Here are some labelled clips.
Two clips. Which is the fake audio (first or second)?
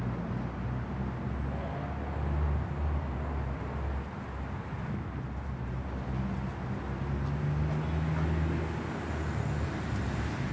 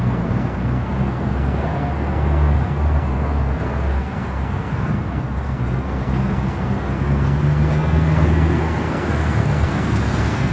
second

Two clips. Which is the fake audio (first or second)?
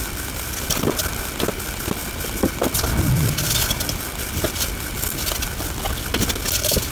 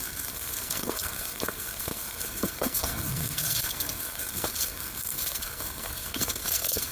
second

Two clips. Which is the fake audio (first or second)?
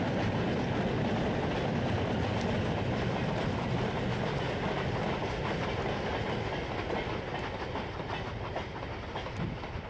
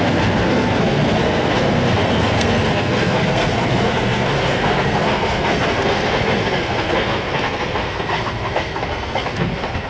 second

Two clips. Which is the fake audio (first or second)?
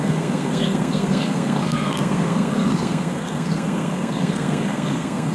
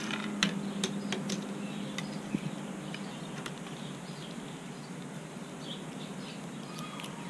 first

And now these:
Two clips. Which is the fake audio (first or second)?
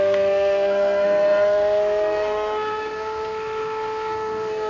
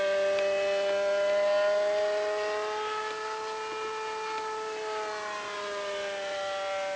first